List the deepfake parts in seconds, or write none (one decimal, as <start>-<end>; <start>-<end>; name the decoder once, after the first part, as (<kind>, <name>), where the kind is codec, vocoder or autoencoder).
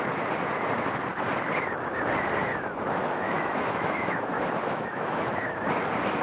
3.0-5.4 (autoencoder, DAC-VAE)